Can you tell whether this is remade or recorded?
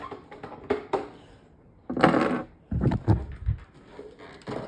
recorded